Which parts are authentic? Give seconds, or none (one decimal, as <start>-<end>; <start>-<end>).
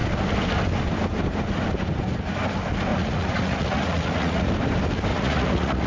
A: 0.0-2.9; 4.5-5.1